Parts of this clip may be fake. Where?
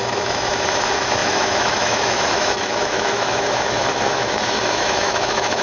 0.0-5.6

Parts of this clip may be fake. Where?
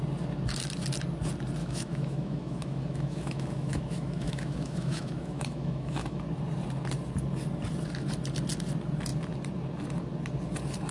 1.6-6.2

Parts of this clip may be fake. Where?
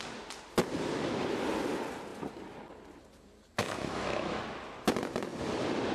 3.6-4.4